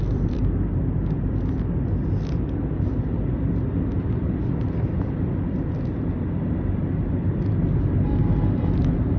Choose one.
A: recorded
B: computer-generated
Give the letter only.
B